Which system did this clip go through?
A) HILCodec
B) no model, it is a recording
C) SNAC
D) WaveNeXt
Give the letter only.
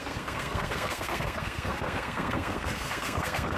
C